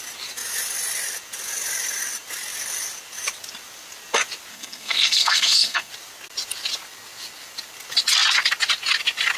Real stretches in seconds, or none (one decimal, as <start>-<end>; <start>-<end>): 0.0-4.5; 5.9-9.4